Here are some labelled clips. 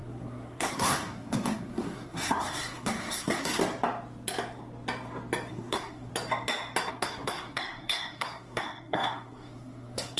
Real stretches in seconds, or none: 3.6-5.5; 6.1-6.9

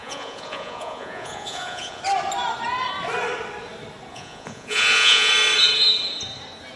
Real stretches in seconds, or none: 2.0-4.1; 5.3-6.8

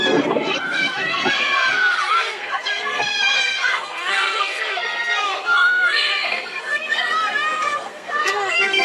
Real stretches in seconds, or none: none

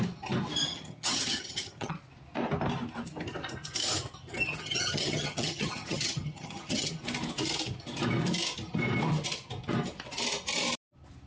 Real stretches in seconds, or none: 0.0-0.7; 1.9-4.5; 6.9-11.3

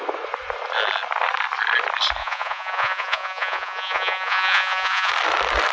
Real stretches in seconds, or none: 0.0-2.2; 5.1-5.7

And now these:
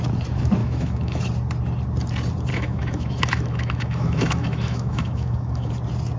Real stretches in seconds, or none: 0.0-0.6; 1.2-2.5; 5.7-6.2

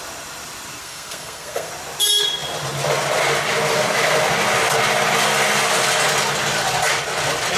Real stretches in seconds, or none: 0.0-0.8; 1.7-7.6

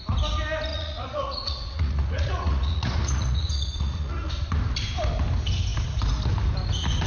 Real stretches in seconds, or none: 0.0-0.7; 4.3-7.1